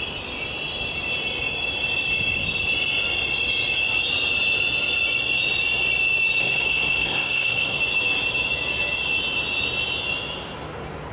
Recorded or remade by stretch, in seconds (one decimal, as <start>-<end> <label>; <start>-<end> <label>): 0.0-6.4 recorded; 6.4-7.8 remade; 7.8-11.1 recorded

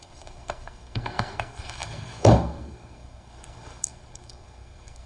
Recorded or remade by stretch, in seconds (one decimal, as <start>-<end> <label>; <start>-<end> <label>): 0.0-5.1 remade

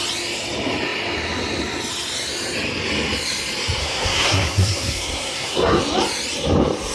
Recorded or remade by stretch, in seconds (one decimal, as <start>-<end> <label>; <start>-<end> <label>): 0.0-3.8 recorded; 3.8-5.8 remade; 5.8-6.9 recorded

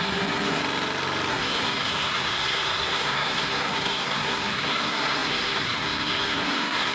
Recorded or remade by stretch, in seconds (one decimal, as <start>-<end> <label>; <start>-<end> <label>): 0.0-0.6 remade; 0.6-1.3 recorded; 1.3-6.9 remade

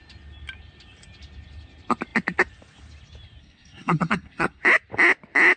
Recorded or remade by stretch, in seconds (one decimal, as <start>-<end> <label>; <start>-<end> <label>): 0.0-3.4 recorded; 3.4-4.6 remade; 4.6-5.6 recorded

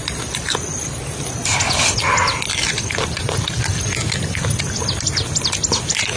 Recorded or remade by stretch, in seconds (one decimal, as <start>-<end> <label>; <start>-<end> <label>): 0.0-6.2 recorded

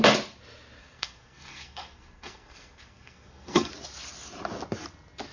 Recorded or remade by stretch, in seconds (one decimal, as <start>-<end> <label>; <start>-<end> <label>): 0.0-0.8 recorded; 0.8-3.7 remade; 3.7-5.3 recorded